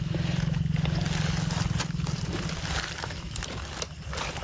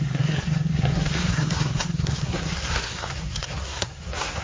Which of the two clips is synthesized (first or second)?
second